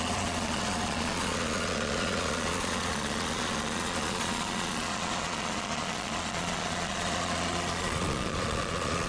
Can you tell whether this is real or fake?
fake